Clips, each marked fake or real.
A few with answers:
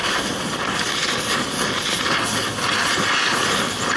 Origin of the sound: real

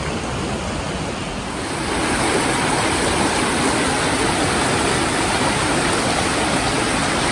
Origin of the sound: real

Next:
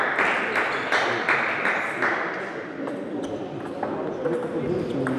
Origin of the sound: real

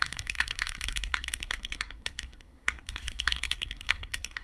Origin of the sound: fake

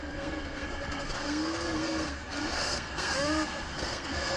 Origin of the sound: fake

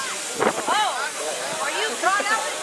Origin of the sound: real